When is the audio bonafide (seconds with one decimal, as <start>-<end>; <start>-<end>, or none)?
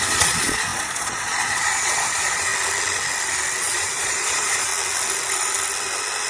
2.5-3.6; 4.7-6.3